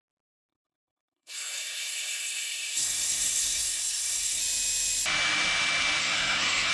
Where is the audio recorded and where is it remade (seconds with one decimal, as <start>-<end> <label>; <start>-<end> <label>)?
0.0-0.5 recorded; 0.5-4.4 remade; 4.4-6.0 recorded; 6.0-6.7 remade

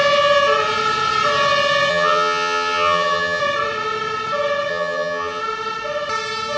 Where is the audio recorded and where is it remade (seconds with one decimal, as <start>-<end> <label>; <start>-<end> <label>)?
0.0-1.9 recorded; 1.9-3.4 remade; 3.4-4.7 recorded; 4.7-5.4 remade; 5.4-6.6 recorded

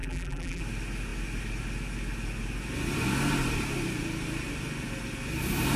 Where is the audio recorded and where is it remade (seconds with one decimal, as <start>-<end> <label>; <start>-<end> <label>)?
0.0-0.6 remade; 0.6-5.8 recorded

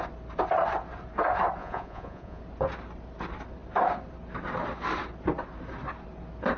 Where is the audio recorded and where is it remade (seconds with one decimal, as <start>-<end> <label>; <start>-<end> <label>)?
0.0-1.6 recorded; 1.6-2.4 remade; 2.4-6.6 recorded